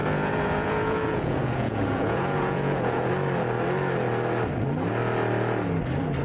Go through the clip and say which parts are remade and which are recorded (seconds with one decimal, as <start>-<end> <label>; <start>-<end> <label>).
0.0-3.1 remade; 3.1-6.2 recorded